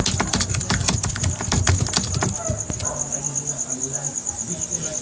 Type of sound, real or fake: real